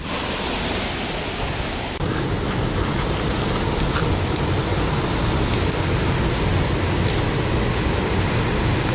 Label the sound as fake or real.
real